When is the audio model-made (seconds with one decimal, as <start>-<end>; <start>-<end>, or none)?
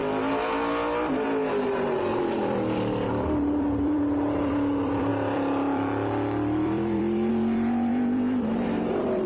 2.3-9.3